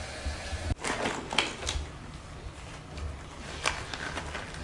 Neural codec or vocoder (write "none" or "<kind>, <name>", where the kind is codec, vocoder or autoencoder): none